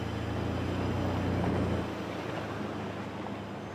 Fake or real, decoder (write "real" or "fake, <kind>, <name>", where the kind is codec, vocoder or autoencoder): real